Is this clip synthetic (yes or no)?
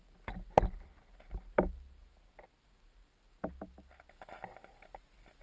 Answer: no